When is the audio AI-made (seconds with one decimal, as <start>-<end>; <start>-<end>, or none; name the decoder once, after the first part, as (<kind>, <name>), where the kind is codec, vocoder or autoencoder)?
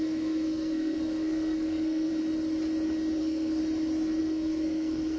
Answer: 0.0-2.1 (codec, SNAC); 3.2-3.6; 4.2-5.2